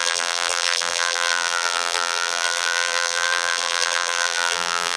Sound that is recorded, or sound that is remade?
remade